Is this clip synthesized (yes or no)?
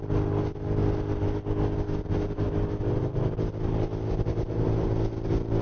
no